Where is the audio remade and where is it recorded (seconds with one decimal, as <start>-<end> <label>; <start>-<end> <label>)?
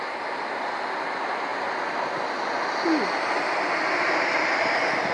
0.0-5.1 recorded